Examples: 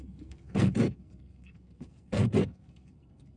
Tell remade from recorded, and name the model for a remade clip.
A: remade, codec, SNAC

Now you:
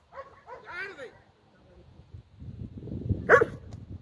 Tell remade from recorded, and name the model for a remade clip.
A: recorded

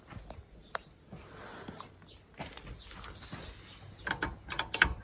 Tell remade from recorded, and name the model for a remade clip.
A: recorded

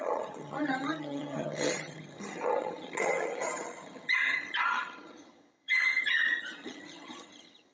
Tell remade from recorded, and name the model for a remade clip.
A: remade, vocoder, HiFi-GAN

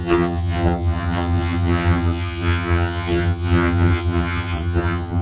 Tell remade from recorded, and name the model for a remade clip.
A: remade, vocoder, HiFi-GAN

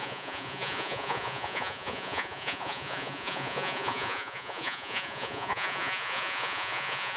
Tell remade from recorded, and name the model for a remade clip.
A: remade, vocoder, Vocos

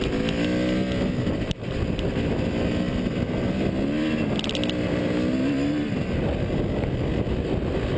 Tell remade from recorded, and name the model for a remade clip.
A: recorded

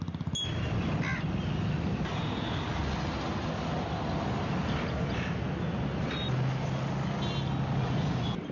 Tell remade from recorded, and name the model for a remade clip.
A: recorded